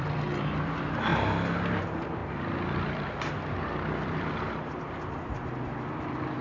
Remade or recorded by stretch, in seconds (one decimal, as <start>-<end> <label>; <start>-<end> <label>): 0.0-1.1 remade; 1.1-1.8 recorded; 1.8-6.4 remade